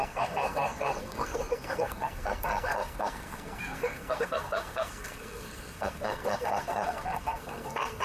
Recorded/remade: remade